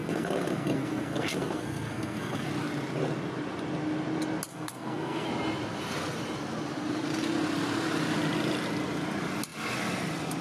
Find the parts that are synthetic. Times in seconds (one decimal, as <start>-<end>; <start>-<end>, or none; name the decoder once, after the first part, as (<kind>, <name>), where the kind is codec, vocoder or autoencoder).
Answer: 0.0-2.5 (codec, SNAC); 4.5-5.3